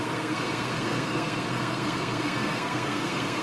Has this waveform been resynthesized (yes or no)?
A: yes